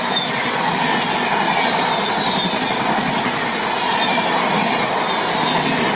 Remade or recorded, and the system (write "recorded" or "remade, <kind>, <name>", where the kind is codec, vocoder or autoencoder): recorded